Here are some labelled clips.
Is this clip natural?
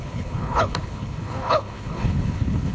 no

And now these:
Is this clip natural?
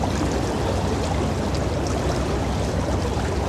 yes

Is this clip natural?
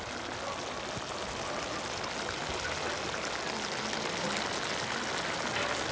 yes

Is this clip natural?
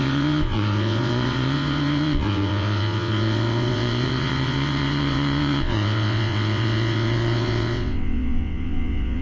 no